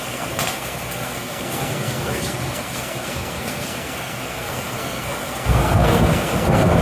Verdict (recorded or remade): remade